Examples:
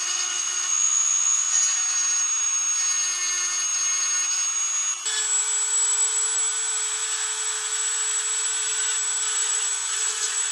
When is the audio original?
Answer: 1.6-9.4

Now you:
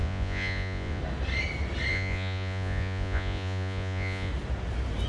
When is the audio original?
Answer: 1.0-1.9; 4.3-5.1

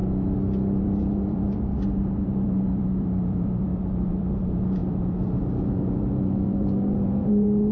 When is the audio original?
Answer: 0.0-0.8